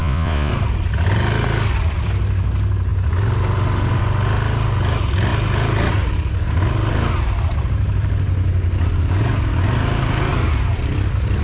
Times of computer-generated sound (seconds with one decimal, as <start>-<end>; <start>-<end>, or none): 0.0-0.5